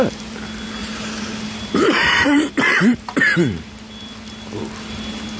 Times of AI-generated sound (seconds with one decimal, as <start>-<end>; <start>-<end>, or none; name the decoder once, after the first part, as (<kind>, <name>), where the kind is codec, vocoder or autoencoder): 0.8-3.7 (vocoder, BigVGAN v2)